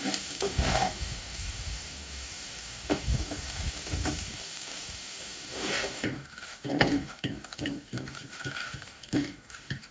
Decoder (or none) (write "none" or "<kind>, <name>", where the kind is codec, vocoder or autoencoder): codec, DAC